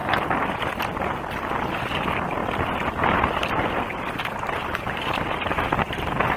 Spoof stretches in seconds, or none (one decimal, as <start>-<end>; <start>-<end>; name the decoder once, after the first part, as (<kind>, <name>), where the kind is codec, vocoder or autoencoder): 2.4-6.4 (vocoder, BigVGAN v2)

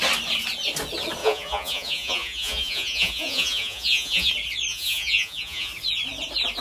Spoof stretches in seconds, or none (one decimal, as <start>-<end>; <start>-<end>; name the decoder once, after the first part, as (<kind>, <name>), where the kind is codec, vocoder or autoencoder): 1.2-4.3 (vocoder, Vocos); 4.7-5.7

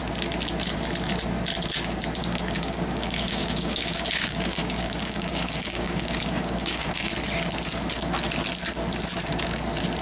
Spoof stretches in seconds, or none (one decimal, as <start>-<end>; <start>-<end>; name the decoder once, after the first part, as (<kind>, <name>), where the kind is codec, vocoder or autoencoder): 2.2-7.1 (codec, DAC)

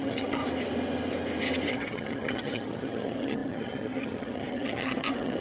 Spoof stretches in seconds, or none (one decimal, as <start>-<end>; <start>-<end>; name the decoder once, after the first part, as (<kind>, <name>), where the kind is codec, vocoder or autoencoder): 0.0-0.4 (vocoder, HiFi-GAN); 1.7-5.4

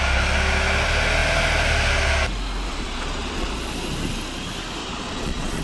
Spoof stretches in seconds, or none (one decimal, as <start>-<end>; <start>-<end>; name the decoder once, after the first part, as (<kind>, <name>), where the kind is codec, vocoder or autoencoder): 2.7-3.5 (vocoder, Vocos); 4.8-5.6

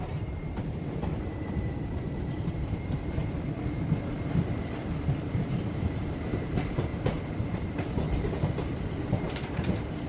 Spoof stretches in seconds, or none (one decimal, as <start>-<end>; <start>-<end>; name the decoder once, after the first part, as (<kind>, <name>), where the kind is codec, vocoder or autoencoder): 0.0-3.2 (vocoder, BigVGAN v2); 5.3-6.9; 9.0-10.1

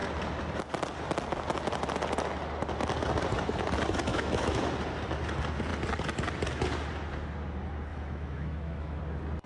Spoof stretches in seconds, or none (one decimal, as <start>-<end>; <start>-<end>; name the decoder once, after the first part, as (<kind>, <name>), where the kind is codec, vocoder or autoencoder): 4.1-4.6 (autoencoder, DAC-VAE); 7.9-9.0